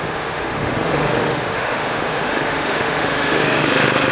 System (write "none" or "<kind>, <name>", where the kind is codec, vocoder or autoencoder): autoencoder, DAC-VAE